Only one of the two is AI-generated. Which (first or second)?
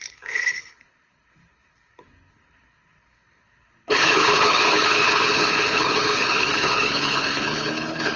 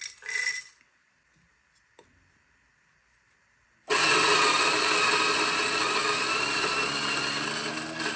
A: first